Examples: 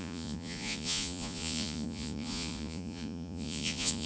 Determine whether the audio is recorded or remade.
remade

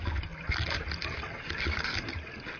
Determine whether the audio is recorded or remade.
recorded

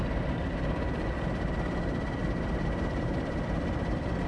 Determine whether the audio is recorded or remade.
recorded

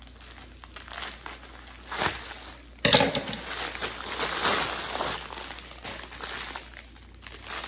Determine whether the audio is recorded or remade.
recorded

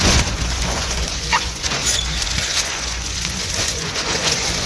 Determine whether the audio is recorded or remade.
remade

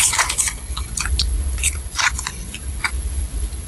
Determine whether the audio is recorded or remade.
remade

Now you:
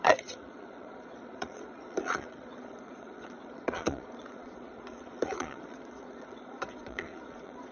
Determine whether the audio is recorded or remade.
remade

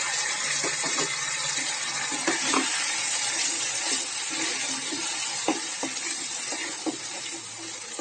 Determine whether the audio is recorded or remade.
recorded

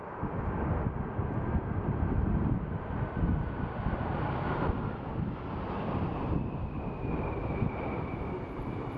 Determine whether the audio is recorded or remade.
recorded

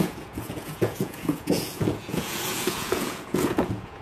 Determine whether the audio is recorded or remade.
remade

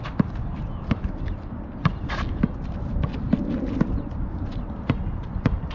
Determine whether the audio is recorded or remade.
recorded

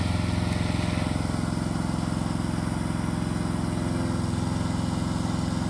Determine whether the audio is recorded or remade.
recorded